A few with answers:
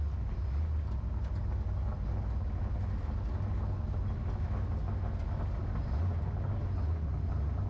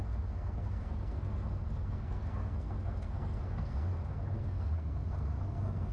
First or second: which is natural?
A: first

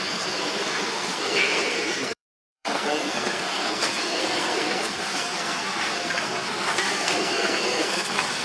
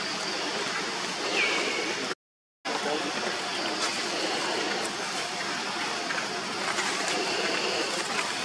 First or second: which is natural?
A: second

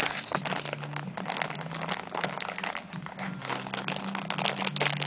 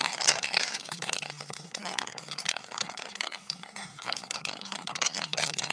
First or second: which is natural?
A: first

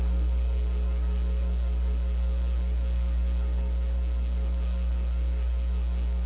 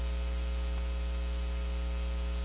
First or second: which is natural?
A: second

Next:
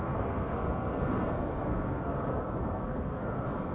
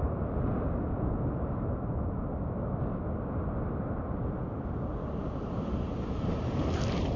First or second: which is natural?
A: second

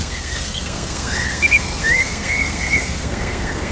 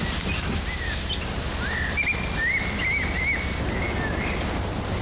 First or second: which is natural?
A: second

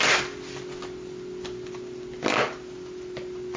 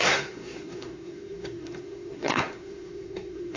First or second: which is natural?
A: first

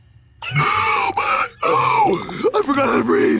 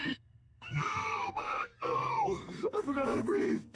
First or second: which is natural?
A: first